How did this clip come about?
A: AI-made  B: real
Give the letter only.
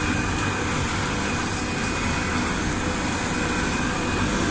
B